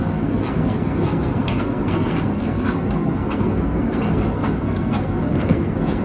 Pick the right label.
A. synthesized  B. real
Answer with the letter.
A